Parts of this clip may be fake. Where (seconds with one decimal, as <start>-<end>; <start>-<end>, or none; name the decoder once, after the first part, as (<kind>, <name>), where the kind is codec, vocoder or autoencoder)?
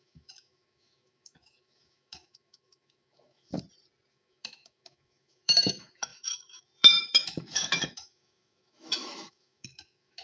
0.0-3.5 (autoencoder, DAC-VAE); 4.1-10.2